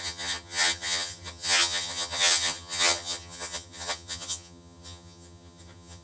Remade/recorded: remade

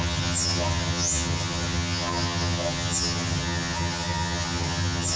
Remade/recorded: remade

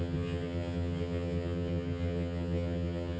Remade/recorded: remade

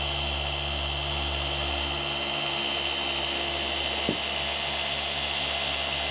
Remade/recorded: recorded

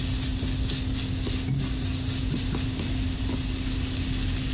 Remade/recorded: recorded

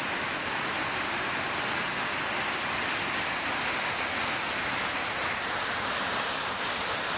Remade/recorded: recorded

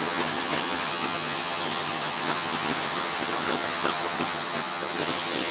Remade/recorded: remade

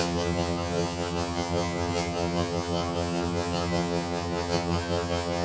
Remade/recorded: remade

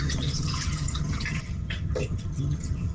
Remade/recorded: remade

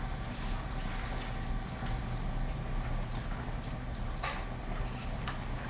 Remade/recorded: recorded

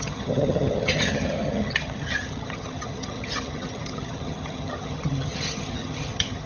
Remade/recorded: remade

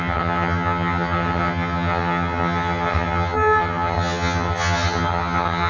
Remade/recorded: remade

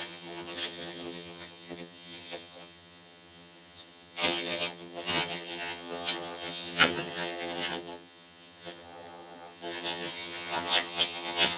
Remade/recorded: remade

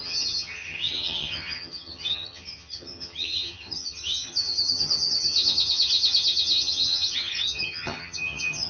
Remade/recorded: remade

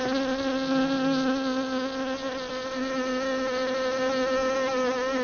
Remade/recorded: recorded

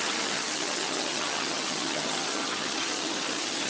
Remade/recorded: remade